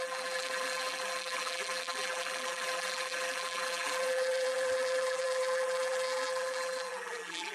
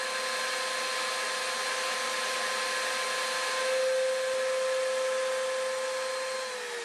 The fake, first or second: first